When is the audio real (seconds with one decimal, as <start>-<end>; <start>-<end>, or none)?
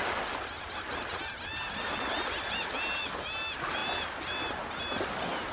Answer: 0.0-5.5